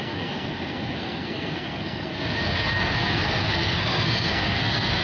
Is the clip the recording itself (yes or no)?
no